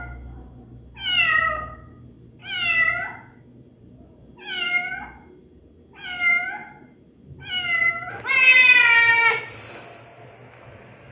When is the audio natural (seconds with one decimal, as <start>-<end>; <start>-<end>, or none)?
0.0-2.4; 4.3-6.6; 9.4-11.1